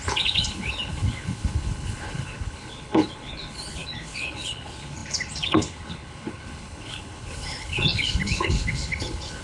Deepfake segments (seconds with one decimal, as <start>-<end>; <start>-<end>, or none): 0.0-9.4